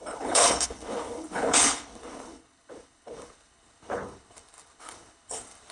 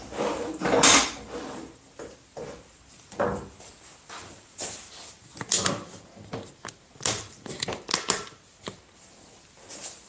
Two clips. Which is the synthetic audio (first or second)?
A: first